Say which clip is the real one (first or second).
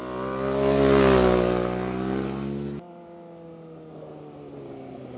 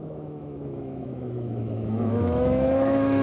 first